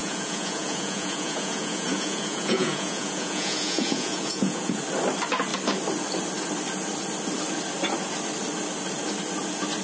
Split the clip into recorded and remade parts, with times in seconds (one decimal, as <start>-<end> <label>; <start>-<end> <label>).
0.0-4.8 remade; 4.8-9.8 recorded

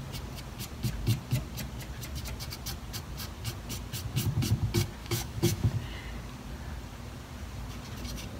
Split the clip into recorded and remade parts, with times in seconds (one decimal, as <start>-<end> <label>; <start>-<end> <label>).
0.0-5.0 recorded; 5.0-5.7 remade; 5.7-8.4 recorded